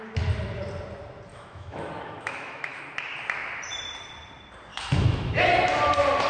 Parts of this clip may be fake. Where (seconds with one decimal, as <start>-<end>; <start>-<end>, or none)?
1.3-2.8; 4.7-5.5